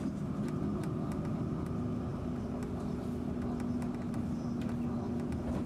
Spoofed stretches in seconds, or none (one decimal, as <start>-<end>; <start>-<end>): none